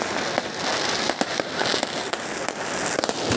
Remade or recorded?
recorded